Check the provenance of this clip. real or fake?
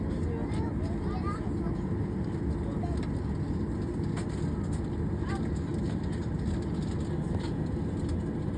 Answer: real